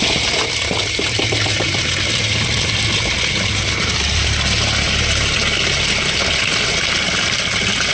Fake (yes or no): no